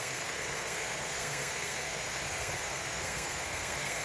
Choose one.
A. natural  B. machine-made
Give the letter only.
B